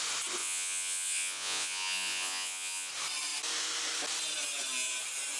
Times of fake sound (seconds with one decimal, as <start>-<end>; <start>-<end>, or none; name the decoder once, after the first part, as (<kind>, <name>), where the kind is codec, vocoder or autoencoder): 0.4-2.9 (vocoder, Vocos)